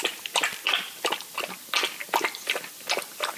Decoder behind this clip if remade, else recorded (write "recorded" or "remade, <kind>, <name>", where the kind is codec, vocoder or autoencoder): recorded